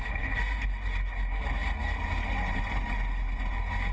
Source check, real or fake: real